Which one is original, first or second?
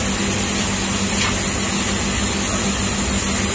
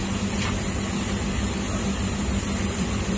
first